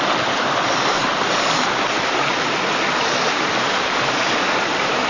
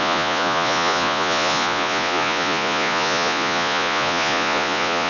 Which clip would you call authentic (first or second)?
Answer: first